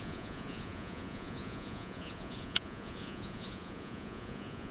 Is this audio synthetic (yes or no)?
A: yes